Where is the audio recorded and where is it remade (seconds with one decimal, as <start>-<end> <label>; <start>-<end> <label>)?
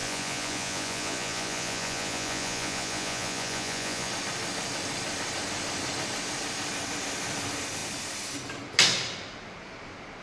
0.0-4.1 remade; 4.1-10.2 recorded